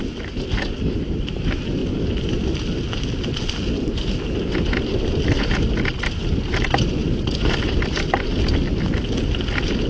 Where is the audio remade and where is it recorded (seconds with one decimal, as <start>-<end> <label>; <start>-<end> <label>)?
0.0-9.9 recorded